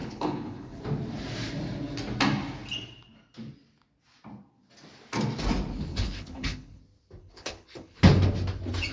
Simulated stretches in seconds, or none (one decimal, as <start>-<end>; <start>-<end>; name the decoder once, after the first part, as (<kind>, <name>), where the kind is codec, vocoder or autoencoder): 0.0-0.8 (codec, HILCodec); 5.9-6.8; 7.2-8.0